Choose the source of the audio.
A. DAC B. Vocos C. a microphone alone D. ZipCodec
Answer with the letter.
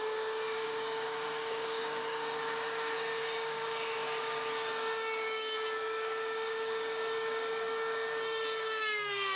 A